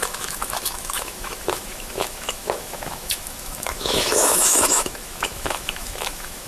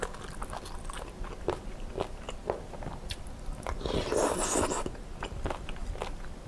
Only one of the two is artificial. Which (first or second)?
first